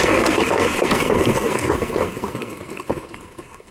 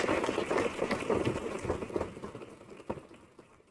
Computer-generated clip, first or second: first